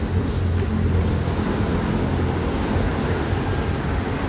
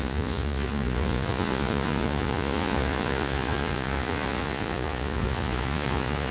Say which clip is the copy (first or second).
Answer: second